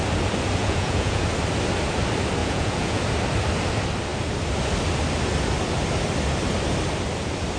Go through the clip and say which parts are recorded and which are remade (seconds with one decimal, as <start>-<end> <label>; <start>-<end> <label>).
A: 0.0-0.6 recorded; 0.6-1.2 remade; 1.2-2.4 recorded; 2.4-3.0 remade; 3.0-7.6 recorded